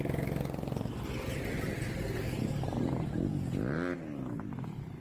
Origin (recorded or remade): recorded